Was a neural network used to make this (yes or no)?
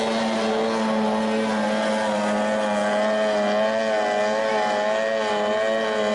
no